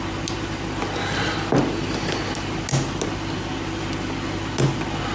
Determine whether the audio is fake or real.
real